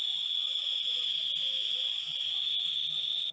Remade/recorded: recorded